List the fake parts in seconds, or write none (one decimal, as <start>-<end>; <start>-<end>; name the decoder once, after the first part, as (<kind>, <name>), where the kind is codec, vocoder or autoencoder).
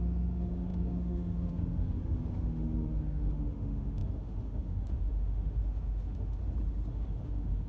0.0-6.4 (autoencoder, DAC-VAE); 6.9-7.7